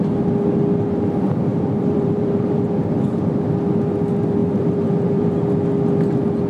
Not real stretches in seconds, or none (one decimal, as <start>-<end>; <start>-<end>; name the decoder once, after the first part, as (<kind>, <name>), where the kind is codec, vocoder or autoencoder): 1.5-3.3 (vocoder, BigVGAN v2); 4.4-5.4